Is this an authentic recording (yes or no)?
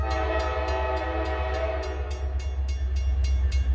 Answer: yes